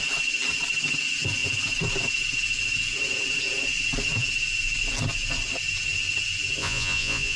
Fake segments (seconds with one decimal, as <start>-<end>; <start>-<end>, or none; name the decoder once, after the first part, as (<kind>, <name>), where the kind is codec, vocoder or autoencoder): 6.6-7.4 (vocoder, Vocos)